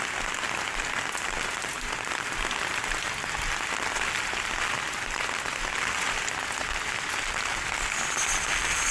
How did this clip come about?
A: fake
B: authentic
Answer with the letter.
B